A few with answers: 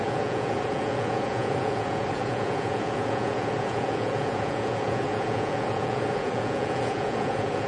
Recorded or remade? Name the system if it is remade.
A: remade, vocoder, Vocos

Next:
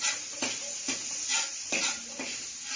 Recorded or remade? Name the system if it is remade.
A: recorded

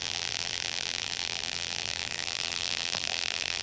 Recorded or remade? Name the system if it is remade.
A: remade, vocoder, BigVGAN v2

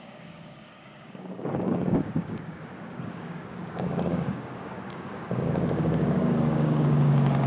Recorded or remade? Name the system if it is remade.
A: remade, codec, DAC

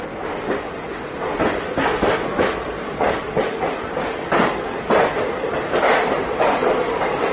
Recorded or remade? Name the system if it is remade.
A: recorded